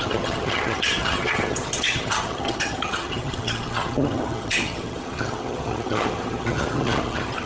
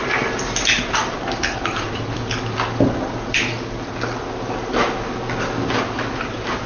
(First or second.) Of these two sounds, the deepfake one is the first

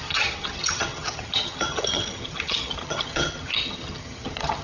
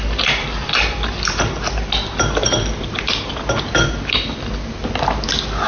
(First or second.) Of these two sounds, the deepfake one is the first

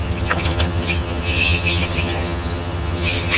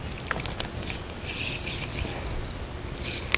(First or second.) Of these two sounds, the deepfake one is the first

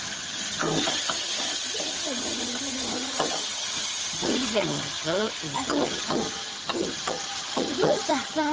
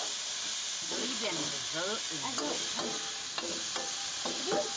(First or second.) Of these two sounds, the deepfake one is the first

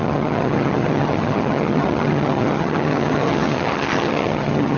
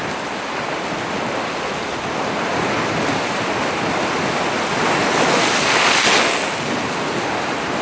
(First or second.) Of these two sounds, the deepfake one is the first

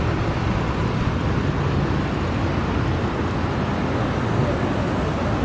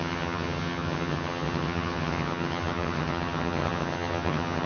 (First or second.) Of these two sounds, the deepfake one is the second